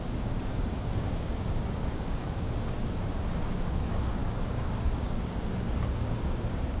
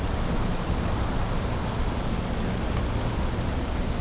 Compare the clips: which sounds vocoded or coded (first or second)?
first